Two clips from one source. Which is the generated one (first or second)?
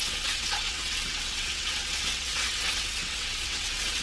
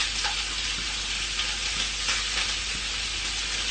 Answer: first